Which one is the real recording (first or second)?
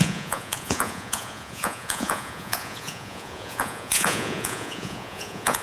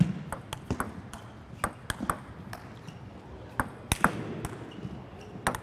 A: second